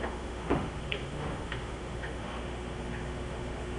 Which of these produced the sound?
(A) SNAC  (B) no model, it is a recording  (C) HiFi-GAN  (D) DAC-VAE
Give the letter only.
D